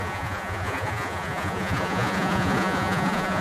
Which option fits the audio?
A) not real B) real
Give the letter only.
A